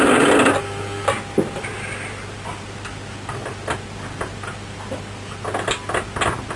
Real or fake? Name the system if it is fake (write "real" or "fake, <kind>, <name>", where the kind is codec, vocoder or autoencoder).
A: real